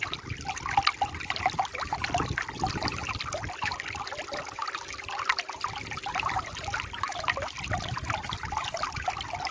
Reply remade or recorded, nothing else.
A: recorded